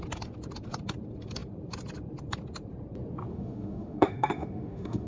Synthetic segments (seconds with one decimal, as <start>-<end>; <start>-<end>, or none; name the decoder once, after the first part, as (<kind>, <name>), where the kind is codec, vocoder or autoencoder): 3.3-5.1 (autoencoder, DAC-VAE)